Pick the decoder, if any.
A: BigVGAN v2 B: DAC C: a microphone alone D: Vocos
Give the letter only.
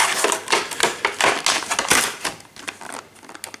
C